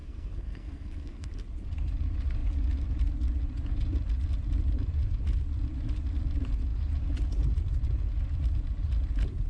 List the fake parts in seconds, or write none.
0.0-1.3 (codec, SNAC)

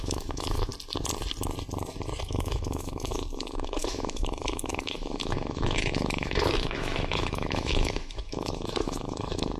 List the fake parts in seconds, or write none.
0.0-0.7 (autoencoder, DAC-VAE); 2.2-9.6

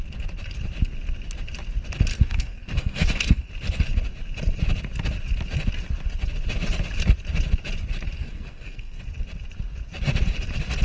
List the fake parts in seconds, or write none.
2.1-3.5 (codec, SNAC); 8.2-9.0

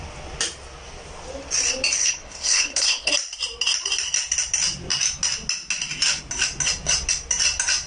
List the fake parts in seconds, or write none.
2.0-3.1 (codec, HILCodec)

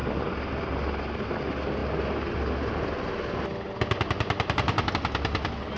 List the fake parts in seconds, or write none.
none